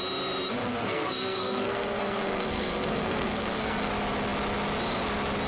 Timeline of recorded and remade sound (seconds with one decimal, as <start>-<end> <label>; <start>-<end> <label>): 0.0-0.6 recorded; 0.6-3.9 remade; 3.9-5.5 recorded